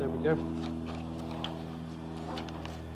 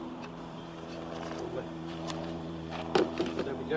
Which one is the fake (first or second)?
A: second